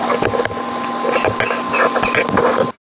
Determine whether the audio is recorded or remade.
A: recorded